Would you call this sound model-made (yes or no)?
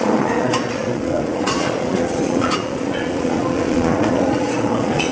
yes